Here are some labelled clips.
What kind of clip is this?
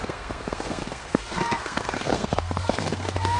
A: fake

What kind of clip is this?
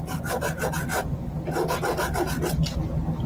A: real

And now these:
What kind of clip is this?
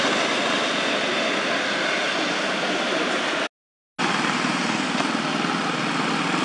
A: real